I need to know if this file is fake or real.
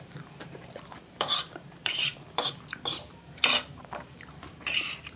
fake